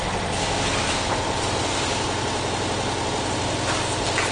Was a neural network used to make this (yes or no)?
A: no